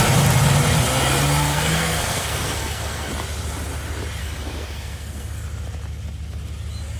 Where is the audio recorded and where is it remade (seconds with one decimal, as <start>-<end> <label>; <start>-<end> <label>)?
0.0-1.4 recorded; 1.4-3.1 remade; 3.1-4.2 recorded; 4.2-5.4 remade; 5.4-7.0 recorded